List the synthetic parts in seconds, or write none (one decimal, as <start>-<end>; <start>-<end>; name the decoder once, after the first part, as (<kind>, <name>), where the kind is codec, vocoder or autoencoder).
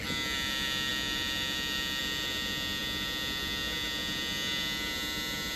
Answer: none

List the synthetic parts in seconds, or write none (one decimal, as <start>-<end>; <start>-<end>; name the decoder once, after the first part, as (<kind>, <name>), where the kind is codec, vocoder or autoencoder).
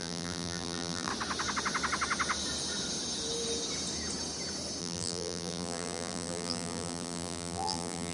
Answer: 0.0-1.1 (vocoder, BigVGAN v2); 4.8-8.1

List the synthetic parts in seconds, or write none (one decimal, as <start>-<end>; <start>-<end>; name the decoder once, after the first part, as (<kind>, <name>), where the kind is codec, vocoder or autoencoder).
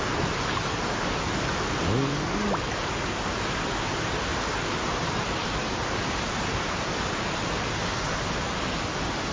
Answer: 4.3-6.3 (vocoder, BigVGAN v2)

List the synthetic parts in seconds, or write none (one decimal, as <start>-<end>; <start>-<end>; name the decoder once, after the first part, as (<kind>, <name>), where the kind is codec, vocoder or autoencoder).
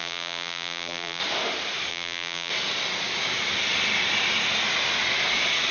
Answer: 0.0-1.2 (vocoder, BigVGAN v2); 1.9-2.5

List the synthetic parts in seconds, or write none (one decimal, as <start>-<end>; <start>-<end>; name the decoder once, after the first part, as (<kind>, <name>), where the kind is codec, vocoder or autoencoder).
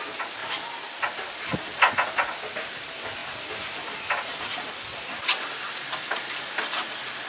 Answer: 3.2-6.6 (vocoder, BigVGAN v2)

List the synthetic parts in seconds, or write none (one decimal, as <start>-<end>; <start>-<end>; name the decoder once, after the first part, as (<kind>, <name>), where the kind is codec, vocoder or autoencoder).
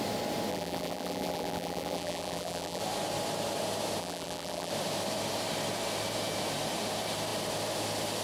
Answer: 0.5-2.8 (vocoder, BigVGAN v2); 4.0-4.7